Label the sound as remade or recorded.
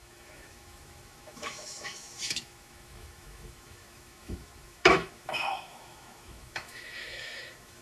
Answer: remade